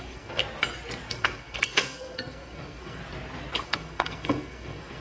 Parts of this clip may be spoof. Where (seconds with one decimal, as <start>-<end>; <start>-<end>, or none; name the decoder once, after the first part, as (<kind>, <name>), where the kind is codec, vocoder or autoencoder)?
0.0-0.4 (codec, SNAC); 1.1-3.0; 3.6-5.0